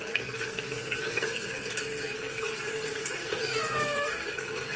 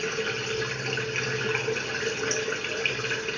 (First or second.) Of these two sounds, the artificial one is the first